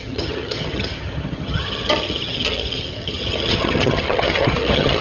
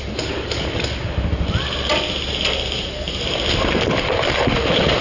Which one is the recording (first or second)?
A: second